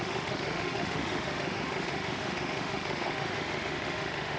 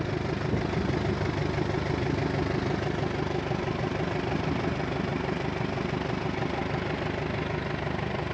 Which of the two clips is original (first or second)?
second